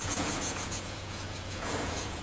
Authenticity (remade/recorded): remade